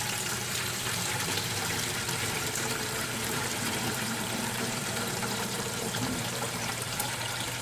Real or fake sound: fake